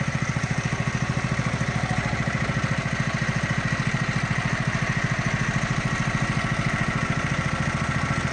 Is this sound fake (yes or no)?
no